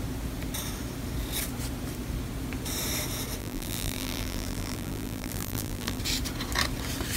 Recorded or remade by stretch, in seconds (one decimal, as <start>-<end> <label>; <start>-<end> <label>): 0.0-3.4 recorded; 3.4-6.0 remade; 6.0-7.2 recorded

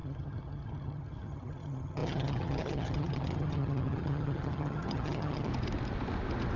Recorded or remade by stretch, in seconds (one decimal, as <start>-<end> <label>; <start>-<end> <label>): 0.0-5.5 remade; 5.5-6.6 recorded

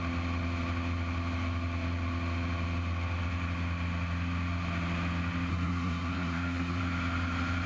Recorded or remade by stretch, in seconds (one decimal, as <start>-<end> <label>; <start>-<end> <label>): 0.0-5.5 recorded; 5.5-6.8 remade; 6.8-7.7 recorded